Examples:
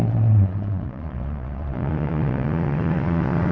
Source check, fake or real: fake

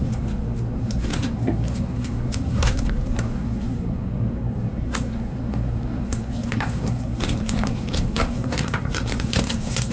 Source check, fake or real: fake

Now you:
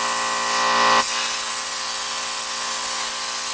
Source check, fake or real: real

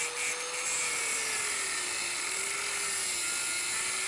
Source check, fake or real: real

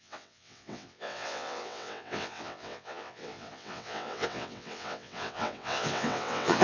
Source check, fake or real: fake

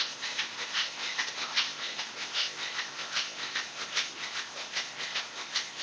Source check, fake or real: fake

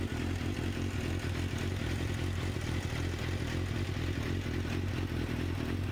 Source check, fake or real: real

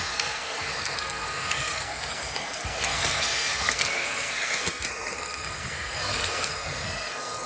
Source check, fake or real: fake